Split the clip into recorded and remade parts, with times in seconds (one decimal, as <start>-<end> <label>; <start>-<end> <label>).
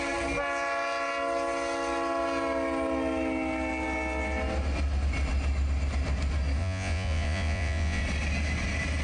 0.0-6.6 recorded; 6.6-8.0 remade; 8.0-9.0 recorded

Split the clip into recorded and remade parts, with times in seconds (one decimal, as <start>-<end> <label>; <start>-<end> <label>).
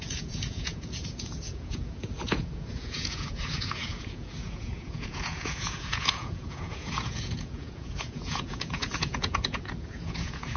0.0-10.6 remade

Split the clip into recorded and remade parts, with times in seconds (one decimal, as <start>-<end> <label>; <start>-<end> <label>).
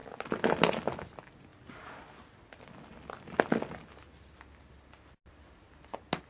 0.0-6.3 recorded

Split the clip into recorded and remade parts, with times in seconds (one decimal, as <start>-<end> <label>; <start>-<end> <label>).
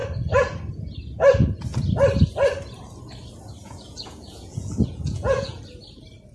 0.0-3.6 recorded; 3.6-5.6 remade; 5.6-6.3 recorded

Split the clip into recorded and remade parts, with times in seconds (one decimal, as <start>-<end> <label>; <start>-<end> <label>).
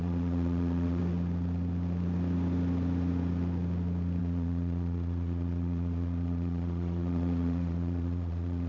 0.0-1.0 remade; 1.0-4.2 recorded; 4.2-8.7 remade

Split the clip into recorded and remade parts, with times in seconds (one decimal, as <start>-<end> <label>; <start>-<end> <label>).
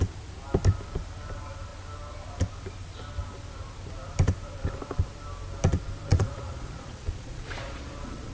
0.0-6.1 recorded; 6.1-8.3 remade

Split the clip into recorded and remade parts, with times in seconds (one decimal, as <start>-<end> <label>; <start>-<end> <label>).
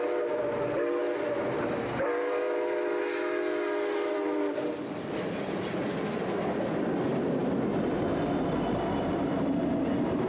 0.0-10.3 recorded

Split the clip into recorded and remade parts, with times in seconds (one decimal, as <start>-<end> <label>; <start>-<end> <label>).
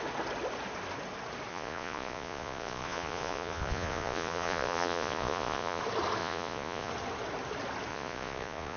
0.0-1.5 recorded; 1.5-5.8 remade; 5.8-6.2 recorded; 6.2-6.9 remade; 6.9-7.9 recorded; 7.9-8.8 remade